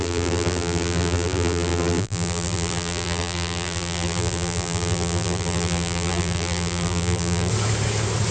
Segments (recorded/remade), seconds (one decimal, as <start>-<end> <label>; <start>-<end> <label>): 0.0-7.5 remade; 7.5-8.3 recorded